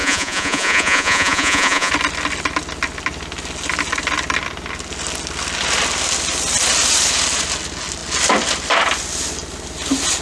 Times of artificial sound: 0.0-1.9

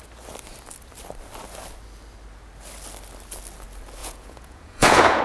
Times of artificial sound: 4.0-5.2